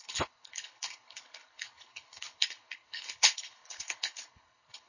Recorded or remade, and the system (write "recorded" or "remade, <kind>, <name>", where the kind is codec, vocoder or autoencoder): remade, codec, HILCodec